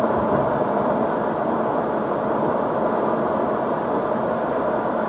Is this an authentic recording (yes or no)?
yes